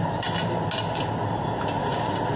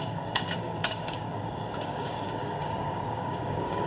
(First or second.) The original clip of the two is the first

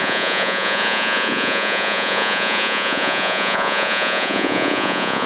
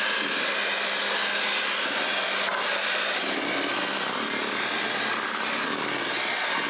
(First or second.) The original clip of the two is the second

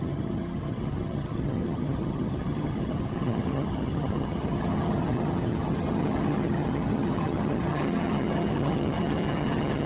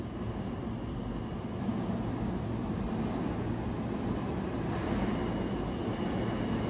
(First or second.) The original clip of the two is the second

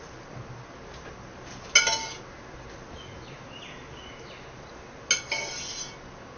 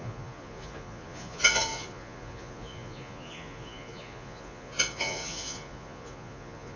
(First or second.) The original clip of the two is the first